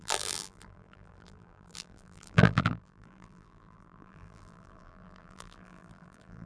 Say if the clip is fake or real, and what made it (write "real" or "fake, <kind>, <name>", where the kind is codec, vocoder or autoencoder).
fake, vocoder, BigVGAN v2